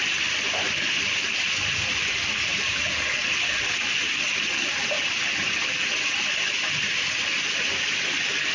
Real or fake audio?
real